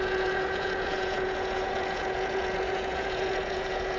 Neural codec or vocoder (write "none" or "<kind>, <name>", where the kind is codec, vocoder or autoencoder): vocoder, Vocos